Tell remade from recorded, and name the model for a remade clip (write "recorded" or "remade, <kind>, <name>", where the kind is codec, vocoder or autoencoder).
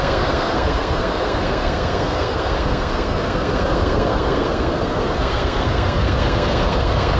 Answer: remade, codec, SNAC